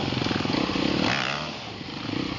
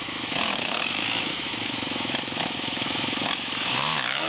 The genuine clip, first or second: first